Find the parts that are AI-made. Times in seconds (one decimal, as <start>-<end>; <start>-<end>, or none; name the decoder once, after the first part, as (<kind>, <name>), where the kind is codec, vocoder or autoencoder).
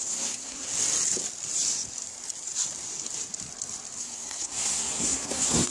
0.0-0.7 (codec, SNAC); 4.0-5.7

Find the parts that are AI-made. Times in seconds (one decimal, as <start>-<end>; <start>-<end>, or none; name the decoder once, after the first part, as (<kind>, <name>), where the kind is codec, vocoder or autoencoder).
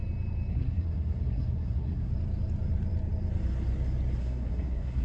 0.5-2.1 (codec, SNAC); 4.2-5.0